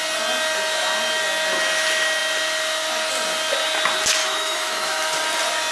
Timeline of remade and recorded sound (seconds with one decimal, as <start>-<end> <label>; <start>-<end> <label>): 0.0-4.2 recorded; 4.2-5.0 remade; 5.0-5.7 recorded